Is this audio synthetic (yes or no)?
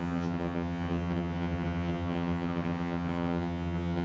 yes